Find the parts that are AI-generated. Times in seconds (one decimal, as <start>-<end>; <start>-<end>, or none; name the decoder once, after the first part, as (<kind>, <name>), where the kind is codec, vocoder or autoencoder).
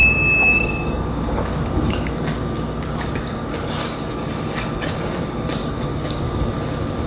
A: 0.0-4.3 (codec, DAC); 5.6-6.4